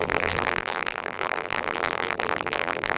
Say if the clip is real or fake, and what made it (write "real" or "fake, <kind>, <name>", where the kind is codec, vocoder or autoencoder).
fake, vocoder, BigVGAN v2